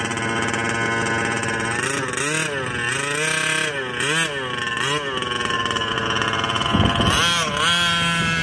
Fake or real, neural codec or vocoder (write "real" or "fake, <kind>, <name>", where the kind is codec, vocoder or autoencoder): real